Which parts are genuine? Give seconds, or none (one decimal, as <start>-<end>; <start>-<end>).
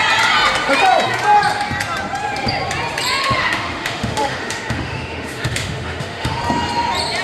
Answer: 0.0-3.2; 6.4-7.2